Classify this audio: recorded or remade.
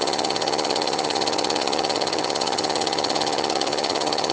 remade